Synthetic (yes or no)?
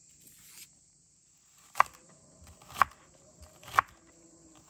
no